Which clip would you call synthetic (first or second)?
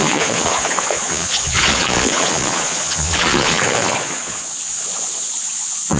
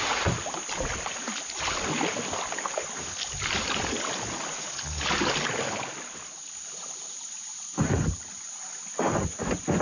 first